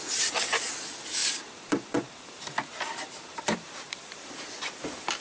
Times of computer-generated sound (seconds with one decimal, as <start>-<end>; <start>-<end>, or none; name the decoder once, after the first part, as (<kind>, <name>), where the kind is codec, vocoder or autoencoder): 1.2-4.3 (vocoder, BigVGAN v2)